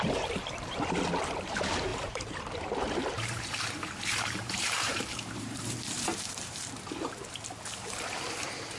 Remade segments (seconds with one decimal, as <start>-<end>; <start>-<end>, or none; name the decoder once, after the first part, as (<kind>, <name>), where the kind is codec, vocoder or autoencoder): 1.9-6.7 (vocoder, BigVGAN v2)